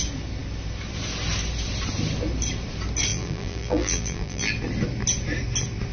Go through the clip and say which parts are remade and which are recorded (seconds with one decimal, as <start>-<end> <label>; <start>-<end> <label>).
0.0-3.1 recorded; 3.1-4.5 remade; 4.5-5.9 recorded

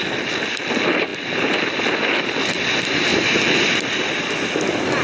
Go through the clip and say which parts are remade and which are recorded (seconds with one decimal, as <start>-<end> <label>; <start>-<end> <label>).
0.0-3.1 recorded; 3.1-3.9 remade; 3.9-5.0 recorded

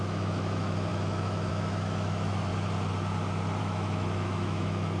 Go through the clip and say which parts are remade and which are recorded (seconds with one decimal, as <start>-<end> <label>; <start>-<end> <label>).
0.0-2.5 remade; 2.5-3.6 recorded; 3.6-5.0 remade

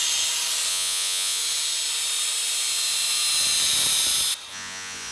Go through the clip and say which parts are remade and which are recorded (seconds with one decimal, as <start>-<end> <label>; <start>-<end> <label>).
0.0-0.7 recorded; 0.7-1.4 remade; 1.4-4.5 recorded; 4.5-5.1 remade

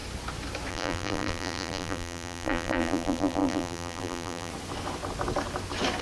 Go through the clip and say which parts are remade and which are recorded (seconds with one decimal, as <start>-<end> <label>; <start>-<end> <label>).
0.0-0.7 recorded; 0.7-4.5 remade; 4.5-6.0 recorded

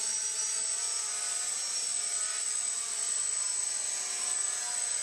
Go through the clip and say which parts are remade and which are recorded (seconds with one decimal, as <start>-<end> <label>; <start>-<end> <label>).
0.0-5.0 recorded

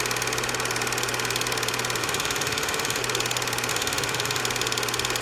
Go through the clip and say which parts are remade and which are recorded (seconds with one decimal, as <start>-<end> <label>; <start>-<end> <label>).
0.0-2.0 recorded; 2.0-3.0 remade; 3.0-3.7 recorded; 3.7-4.4 remade; 4.4-5.2 recorded